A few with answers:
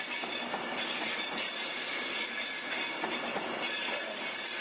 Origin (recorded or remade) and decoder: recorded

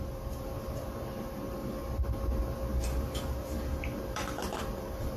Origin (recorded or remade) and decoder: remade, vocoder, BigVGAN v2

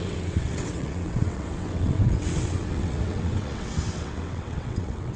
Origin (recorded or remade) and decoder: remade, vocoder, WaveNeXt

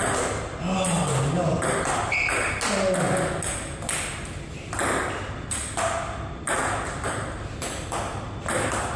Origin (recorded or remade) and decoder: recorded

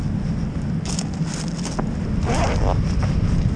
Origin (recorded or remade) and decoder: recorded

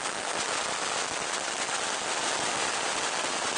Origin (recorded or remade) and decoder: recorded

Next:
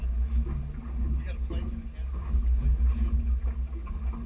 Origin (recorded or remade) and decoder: recorded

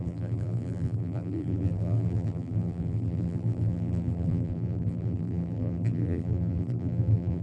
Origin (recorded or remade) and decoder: remade, vocoder, BigVGAN v2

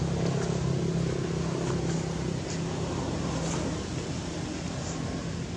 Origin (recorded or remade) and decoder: recorded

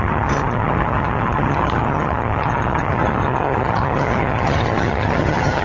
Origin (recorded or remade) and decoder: remade, vocoder, HiFi-GAN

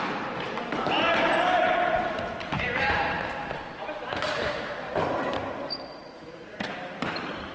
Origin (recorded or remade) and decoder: remade, vocoder, BigVGAN v2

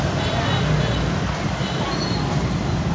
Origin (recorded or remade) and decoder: recorded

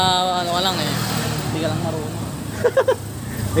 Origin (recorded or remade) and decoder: recorded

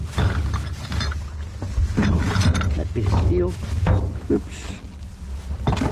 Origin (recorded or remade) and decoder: recorded